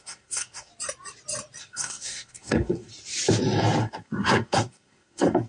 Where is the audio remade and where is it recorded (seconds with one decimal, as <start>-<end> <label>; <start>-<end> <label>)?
0.0-0.7 remade; 0.7-1.6 recorded; 1.6-2.9 remade; 2.9-3.8 recorded; 3.8-5.5 remade